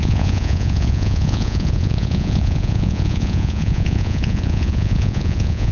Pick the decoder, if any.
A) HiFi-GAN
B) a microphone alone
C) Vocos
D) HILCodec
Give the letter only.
C